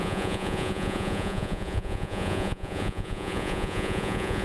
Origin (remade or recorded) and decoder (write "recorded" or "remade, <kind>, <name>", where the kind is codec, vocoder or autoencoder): remade, vocoder, Vocos